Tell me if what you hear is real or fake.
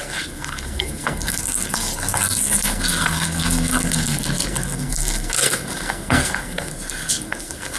fake